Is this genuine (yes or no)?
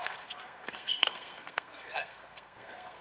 no